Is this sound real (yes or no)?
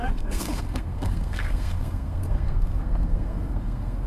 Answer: no